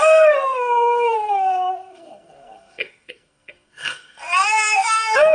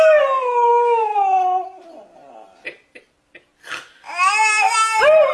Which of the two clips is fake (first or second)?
first